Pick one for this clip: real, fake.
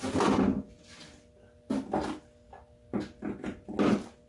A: real